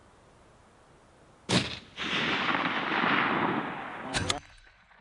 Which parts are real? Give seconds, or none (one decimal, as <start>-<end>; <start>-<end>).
0.0-3.9